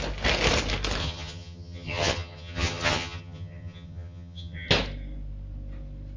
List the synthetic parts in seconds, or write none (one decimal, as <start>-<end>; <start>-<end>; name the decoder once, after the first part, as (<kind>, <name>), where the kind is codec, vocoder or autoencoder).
1.0-4.7 (vocoder, HiFi-GAN)